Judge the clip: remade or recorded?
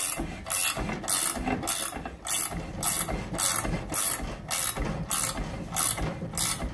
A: recorded